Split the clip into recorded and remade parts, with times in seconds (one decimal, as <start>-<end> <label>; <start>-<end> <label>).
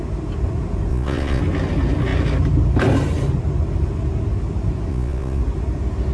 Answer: 0.0-0.9 recorded; 0.9-1.4 remade; 1.4-4.9 recorded; 4.9-5.4 remade; 5.4-6.1 recorded